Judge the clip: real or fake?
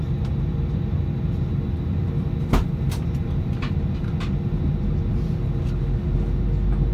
real